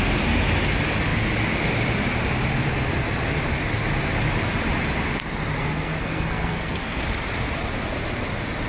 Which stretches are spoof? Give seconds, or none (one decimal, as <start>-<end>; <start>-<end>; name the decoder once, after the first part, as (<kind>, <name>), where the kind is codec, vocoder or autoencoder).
5.6-7.0 (codec, SNAC)